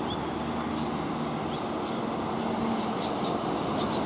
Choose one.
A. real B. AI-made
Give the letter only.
A